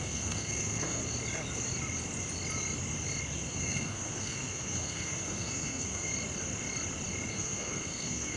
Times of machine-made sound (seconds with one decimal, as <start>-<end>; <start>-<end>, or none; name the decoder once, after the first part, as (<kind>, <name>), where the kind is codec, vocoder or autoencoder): 0.0-1.0 (codec, SNAC); 3.5-6.1; 7.3-8.4